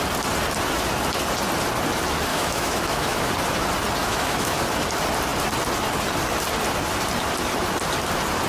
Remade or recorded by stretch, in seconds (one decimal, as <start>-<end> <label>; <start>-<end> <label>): 0.0-2.3 recorded; 2.3-3.3 remade; 3.3-4.0 recorded; 4.0-4.5 remade; 4.5-8.5 recorded